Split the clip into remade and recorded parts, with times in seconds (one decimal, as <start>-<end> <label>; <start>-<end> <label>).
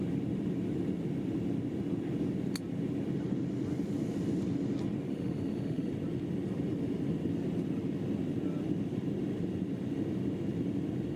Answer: 0.0-5.1 recorded; 5.1-5.9 remade; 5.9-11.2 recorded